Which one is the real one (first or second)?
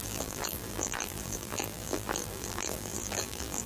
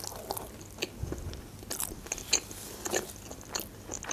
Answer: second